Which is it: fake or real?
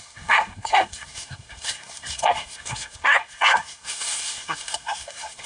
fake